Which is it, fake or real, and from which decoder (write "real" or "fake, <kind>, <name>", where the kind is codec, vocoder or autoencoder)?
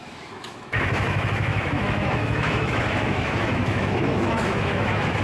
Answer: fake, autoencoder, DAC-VAE